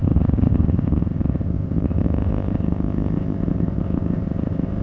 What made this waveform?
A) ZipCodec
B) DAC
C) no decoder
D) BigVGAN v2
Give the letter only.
A